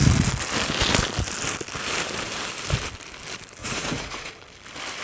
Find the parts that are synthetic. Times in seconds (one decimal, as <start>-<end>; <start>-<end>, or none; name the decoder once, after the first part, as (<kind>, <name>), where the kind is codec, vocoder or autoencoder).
3.6-4.3 (vocoder, Vocos)